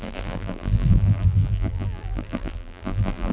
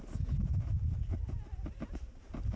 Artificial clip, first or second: first